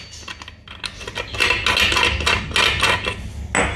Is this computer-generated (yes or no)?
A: no